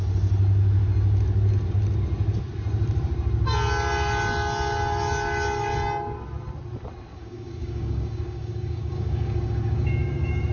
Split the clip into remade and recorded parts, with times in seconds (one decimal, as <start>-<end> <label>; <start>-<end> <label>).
0.0-7.1 recorded; 7.1-10.5 remade